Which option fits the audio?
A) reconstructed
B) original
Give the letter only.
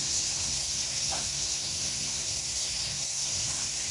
A